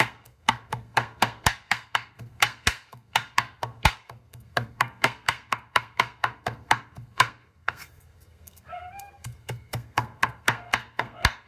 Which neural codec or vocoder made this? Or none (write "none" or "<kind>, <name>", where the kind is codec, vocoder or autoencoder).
codec, SNAC